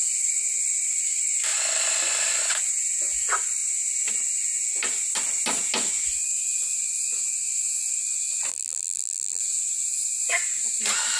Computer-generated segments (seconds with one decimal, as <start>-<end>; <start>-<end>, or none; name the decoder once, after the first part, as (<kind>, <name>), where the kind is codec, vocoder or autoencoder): 8.5-9.4 (vocoder, BigVGAN v2)